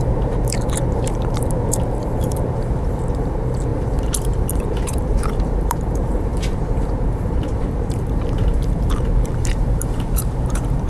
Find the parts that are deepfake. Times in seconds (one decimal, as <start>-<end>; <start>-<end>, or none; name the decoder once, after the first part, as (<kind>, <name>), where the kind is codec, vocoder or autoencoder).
0.0-10.9 (vocoder, BigVGAN v2)

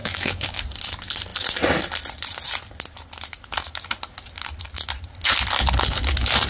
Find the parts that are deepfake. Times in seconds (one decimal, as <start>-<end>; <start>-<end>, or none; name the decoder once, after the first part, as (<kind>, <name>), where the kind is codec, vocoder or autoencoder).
0.0-0.6 (autoencoder, DAC-VAE)